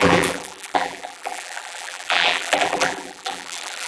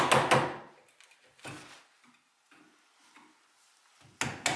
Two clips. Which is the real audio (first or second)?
second